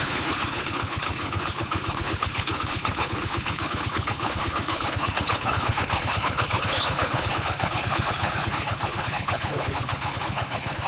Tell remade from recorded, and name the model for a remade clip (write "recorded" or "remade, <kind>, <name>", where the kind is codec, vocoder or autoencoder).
remade, codec, HILCodec